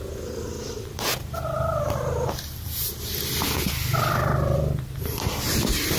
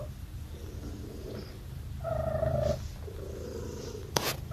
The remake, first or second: second